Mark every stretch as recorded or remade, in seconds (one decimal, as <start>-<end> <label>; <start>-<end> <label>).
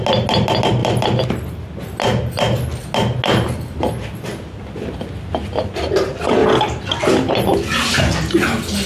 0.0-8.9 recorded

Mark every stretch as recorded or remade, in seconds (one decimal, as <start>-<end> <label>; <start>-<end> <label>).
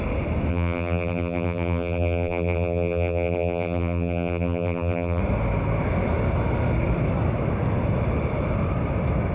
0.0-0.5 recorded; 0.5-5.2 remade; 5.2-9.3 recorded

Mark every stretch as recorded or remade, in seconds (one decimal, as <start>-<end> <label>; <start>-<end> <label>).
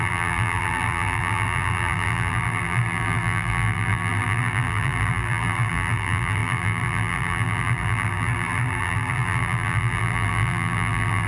0.0-11.3 remade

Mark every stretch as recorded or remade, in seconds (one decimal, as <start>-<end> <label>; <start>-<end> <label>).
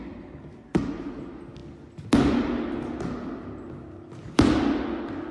0.0-5.3 recorded